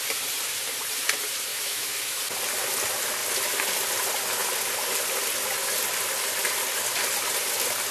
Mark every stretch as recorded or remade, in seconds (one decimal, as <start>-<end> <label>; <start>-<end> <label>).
0.0-1.5 recorded; 1.5-2.2 remade; 2.2-7.9 recorded